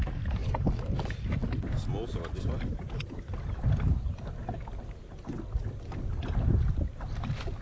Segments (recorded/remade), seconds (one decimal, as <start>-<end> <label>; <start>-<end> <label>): 0.0-7.6 recorded